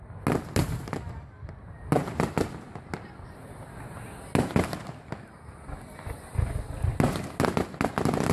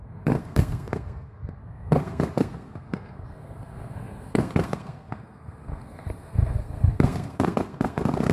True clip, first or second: first